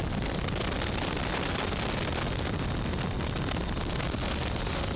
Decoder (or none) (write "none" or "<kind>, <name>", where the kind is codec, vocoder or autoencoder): none